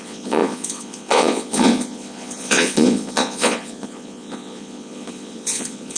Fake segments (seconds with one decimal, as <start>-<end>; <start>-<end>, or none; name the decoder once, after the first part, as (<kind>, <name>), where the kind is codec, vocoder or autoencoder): 0.0-6.0 (vocoder, Vocos)